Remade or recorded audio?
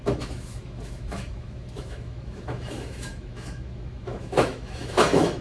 remade